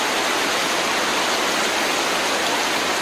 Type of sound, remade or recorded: recorded